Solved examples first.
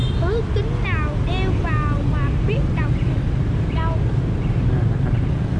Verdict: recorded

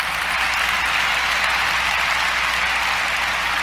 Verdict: recorded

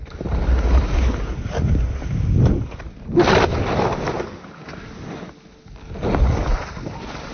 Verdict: recorded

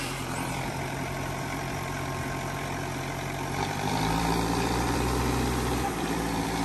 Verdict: remade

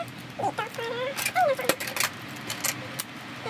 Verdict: recorded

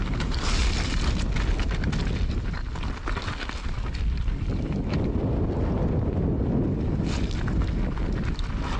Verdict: recorded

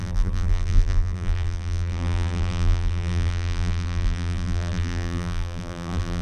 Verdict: remade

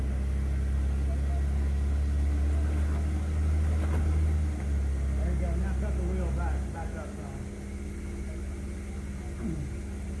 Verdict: recorded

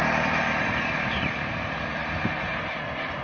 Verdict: recorded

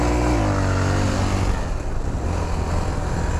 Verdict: recorded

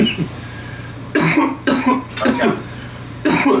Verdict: remade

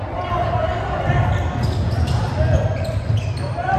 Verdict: remade